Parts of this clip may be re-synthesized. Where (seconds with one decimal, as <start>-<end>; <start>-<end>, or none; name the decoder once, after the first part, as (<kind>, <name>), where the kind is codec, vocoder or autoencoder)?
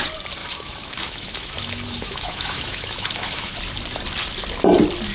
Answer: 0.4-3.5 (autoencoder, DAC-VAE)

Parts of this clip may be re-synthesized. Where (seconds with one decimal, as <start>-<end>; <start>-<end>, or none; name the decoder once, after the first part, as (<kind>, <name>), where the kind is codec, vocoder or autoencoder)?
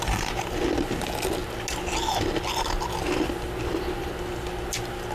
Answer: none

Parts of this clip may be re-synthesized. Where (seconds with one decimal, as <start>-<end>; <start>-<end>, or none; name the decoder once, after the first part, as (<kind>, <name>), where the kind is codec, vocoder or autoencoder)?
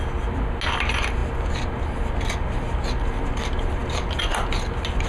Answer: none